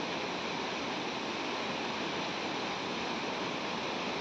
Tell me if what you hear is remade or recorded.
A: recorded